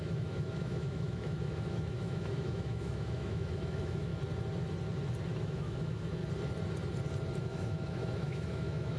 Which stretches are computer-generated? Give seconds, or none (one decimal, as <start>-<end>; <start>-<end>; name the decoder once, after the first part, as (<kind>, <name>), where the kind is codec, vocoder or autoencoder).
0.0-4.1 (autoencoder, DAC-VAE); 5.4-6.2; 7.4-9.0